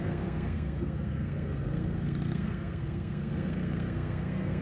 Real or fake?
fake